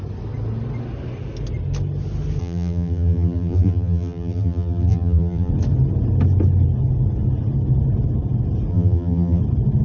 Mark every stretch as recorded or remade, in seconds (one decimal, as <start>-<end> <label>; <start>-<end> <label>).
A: 0.0-2.4 recorded; 2.4-5.5 remade; 5.5-8.7 recorded; 8.7-9.4 remade; 9.4-9.8 recorded